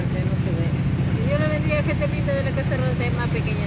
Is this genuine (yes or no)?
yes